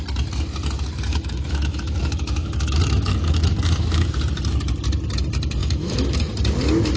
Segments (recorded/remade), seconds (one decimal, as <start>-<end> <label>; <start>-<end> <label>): 0.0-1.1 recorded; 1.1-4.1 remade; 4.1-5.6 recorded; 5.6-6.2 remade; 6.2-7.0 recorded

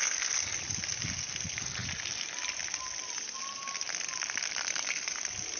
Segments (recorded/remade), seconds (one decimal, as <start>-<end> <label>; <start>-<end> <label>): 0.0-5.6 recorded

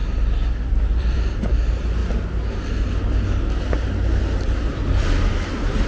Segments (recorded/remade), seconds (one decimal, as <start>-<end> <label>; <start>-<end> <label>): 0.0-0.7 recorded; 0.7-2.0 remade; 2.0-5.5 recorded; 5.5-5.9 remade

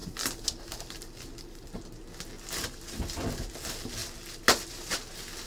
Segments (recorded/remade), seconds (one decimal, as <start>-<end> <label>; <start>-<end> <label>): 0.0-5.5 recorded